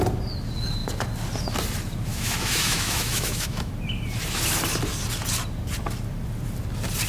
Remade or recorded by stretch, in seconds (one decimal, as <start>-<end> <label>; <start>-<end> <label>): 0.0-2.1 recorded; 2.1-3.7 remade; 3.7-7.1 recorded